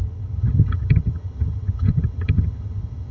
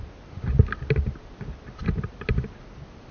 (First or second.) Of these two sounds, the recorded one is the second